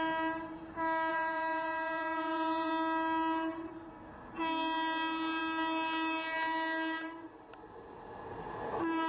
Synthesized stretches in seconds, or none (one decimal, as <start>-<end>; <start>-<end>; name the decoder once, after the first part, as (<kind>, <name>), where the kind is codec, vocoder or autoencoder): 1.1-2.7 (vocoder, Vocos)